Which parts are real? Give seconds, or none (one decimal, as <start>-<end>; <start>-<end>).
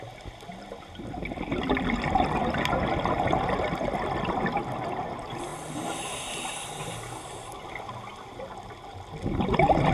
0.0-9.9